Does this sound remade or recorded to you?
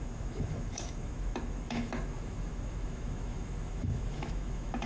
remade